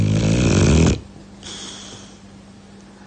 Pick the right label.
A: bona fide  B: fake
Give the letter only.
A